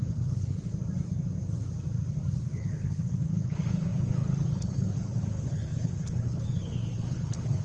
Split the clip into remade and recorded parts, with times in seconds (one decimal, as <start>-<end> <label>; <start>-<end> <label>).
0.0-0.7 remade; 0.7-2.4 recorded; 2.4-7.6 remade